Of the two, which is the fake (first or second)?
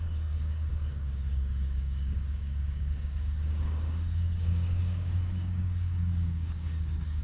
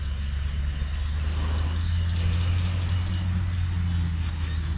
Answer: first